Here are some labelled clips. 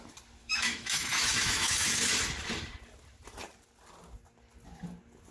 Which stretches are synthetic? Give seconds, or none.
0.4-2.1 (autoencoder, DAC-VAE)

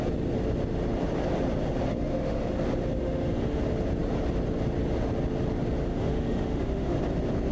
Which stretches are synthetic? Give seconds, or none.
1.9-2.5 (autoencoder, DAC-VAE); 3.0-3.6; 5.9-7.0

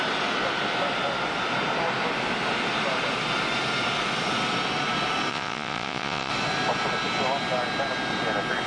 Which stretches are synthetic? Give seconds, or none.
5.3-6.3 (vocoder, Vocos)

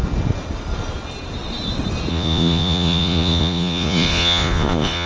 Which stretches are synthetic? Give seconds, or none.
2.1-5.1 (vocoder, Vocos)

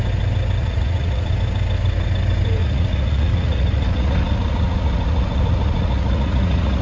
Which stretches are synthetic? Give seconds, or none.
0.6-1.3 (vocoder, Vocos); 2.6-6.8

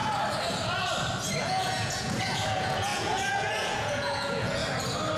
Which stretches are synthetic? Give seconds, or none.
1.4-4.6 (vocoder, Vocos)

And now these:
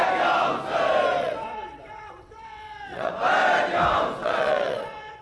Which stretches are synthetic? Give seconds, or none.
1.2-3.1 (vocoder, WaveNeXt); 4.2-5.2